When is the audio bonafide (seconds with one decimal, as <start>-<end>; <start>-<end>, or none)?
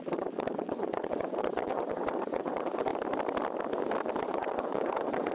2.9-4.2